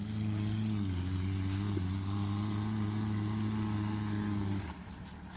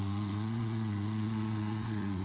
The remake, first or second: second